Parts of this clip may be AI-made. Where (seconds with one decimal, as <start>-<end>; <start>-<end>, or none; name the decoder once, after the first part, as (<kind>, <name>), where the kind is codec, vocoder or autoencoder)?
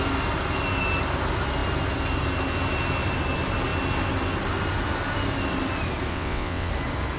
6.1-6.7 (vocoder, WaveNeXt)